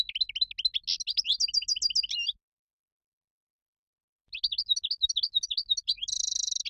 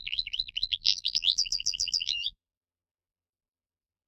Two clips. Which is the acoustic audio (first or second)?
first